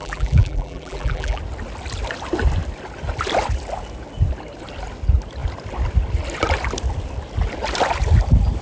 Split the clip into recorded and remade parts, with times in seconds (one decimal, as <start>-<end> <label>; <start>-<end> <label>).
0.0-1.4 remade; 1.4-8.6 recorded